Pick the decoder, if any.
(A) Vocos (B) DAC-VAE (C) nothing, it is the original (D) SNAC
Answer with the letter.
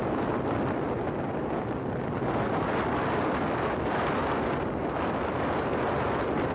C